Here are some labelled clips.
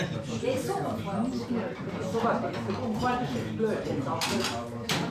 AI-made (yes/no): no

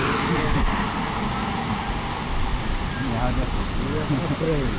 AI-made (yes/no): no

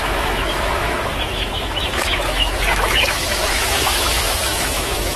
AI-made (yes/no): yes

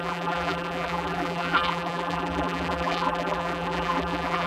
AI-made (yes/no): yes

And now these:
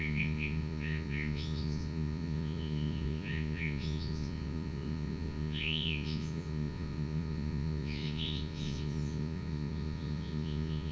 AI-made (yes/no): yes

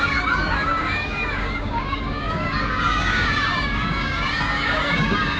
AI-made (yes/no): yes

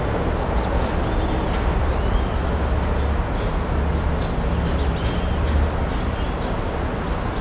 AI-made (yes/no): no